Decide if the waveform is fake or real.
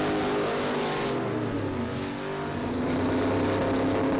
real